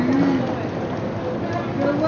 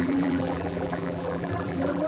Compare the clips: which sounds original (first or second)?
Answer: first